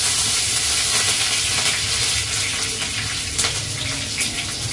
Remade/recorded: recorded